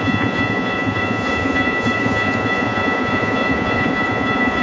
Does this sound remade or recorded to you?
remade